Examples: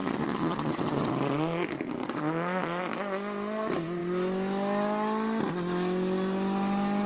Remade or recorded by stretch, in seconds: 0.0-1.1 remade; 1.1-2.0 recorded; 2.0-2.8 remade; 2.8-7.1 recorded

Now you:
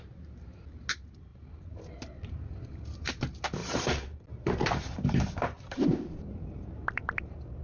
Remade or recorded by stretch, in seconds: 0.0-1.3 recorded; 1.3-3.1 remade; 3.1-3.6 recorded; 3.6-7.6 remade

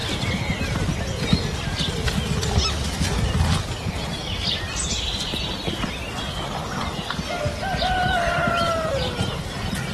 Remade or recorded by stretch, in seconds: 0.0-9.9 recorded

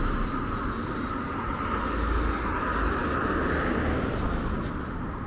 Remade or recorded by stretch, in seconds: 0.0-5.3 recorded